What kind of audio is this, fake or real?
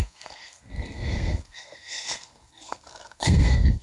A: fake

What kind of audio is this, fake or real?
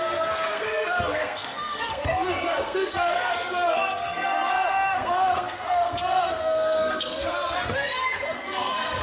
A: fake